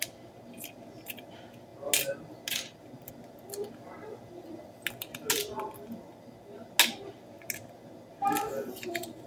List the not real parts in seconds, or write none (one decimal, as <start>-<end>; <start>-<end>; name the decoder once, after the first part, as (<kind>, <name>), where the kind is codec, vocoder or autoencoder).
5.4-6.0 (vocoder, BigVGAN v2)